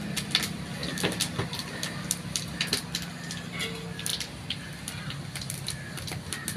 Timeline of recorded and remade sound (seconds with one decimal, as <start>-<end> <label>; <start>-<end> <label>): 0.0-6.6 recorded